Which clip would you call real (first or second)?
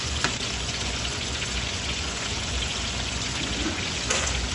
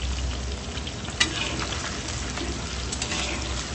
second